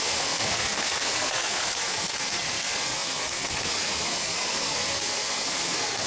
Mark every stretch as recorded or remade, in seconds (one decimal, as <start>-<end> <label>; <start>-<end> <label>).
0.0-6.1 remade